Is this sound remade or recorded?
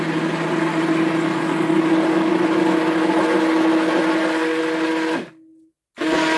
recorded